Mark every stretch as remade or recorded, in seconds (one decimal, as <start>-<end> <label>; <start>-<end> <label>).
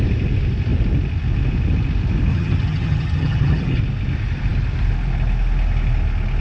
0.0-2.3 recorded; 2.3-3.8 remade; 3.8-6.4 recorded